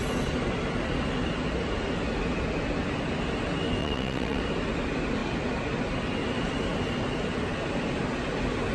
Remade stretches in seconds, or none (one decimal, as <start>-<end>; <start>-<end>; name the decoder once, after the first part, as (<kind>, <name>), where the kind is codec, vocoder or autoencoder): 3.8-4.4 (vocoder, WaveNeXt)